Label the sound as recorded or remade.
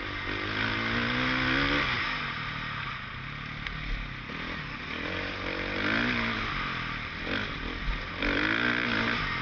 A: recorded